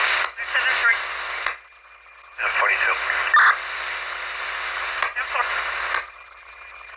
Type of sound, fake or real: real